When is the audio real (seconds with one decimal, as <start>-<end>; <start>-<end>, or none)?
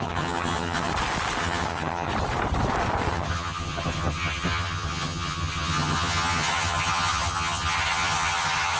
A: 0.9-1.4; 2.1-3.1